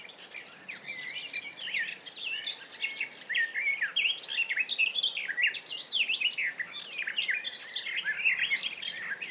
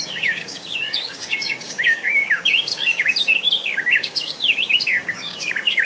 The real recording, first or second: first